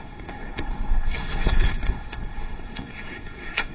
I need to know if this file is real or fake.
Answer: fake